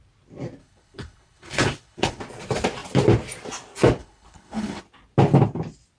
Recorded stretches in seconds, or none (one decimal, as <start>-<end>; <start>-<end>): 0.0-0.6; 2.2-4.0; 4.8-6.0